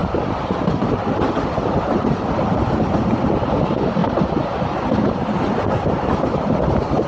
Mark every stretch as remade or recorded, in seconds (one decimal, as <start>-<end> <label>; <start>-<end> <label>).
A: 0.0-1.2 remade; 1.2-4.0 recorded; 4.0-5.4 remade; 5.4-7.1 recorded